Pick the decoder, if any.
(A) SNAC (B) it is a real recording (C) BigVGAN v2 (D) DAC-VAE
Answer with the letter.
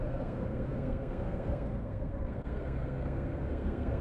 A